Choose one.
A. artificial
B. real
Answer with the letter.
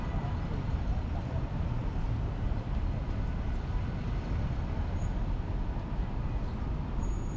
B